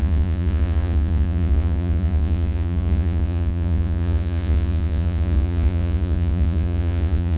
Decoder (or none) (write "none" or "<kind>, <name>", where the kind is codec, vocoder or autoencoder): vocoder, Vocos